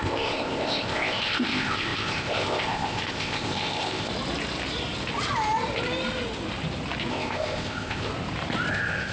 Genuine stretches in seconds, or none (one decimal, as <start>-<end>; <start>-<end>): 4.1-7.1; 8.1-8.7